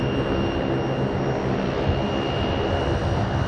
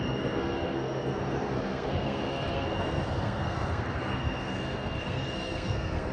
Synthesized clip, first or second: second